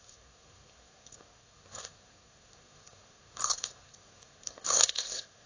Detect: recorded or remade remade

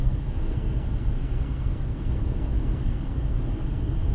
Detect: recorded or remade remade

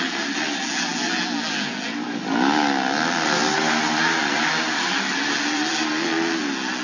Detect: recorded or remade recorded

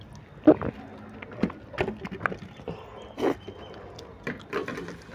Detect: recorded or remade recorded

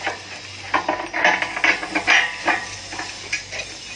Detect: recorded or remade recorded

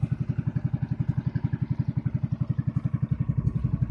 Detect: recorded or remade recorded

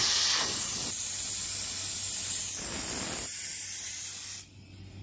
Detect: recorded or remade recorded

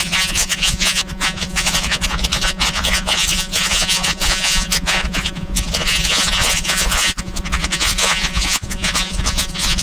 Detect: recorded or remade remade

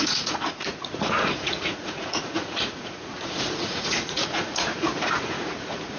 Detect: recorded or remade remade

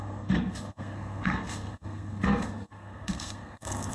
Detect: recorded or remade remade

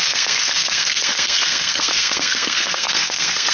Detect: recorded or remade remade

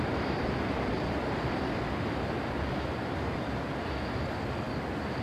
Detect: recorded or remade recorded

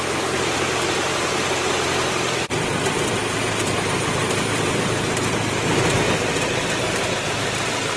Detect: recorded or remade remade